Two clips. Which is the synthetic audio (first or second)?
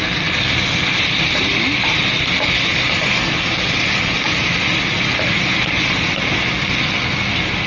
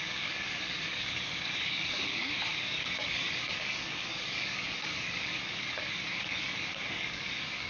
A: second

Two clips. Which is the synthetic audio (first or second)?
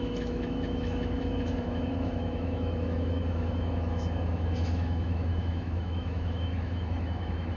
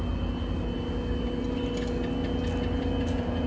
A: first